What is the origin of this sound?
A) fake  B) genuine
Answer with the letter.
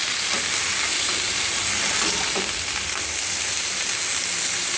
B